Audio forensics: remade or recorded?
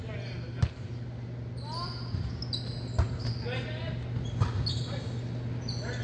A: recorded